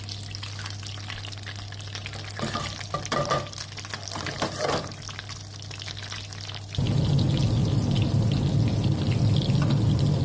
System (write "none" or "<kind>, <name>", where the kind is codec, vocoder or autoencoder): none